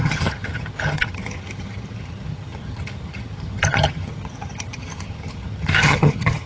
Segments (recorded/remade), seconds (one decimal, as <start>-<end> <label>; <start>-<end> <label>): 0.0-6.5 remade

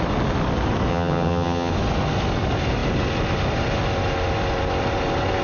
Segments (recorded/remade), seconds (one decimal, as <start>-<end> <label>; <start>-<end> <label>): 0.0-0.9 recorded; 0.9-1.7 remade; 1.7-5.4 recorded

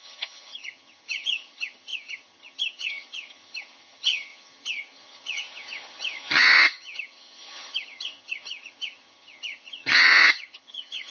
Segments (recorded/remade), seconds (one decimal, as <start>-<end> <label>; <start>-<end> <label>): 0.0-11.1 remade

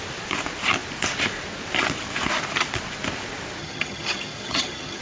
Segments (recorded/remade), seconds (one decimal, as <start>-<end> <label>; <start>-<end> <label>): 0.0-3.6 recorded; 3.6-5.0 remade

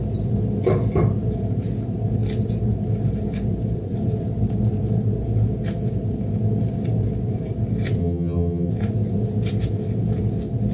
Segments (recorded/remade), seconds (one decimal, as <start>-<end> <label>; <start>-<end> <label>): 0.0-8.0 recorded; 8.0-8.7 remade; 8.7-10.7 recorded

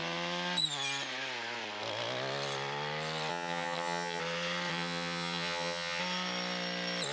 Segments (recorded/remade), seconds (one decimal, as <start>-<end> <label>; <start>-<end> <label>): 0.0-3.3 recorded; 3.3-4.2 remade; 4.2-4.7 recorded; 4.7-6.0 remade; 6.0-7.1 recorded

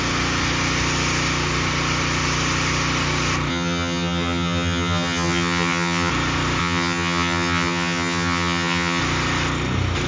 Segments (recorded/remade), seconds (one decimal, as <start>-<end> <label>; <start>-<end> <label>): 0.0-3.5 recorded; 3.5-6.1 remade; 6.1-6.6 recorded; 6.6-9.0 remade; 9.0-10.1 recorded

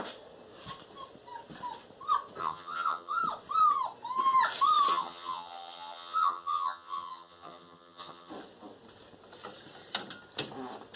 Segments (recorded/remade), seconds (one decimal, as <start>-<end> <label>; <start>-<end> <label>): 0.0-2.4 recorded; 2.4-3.2 remade; 3.2-4.9 recorded; 4.9-8.3 remade; 8.3-11.0 recorded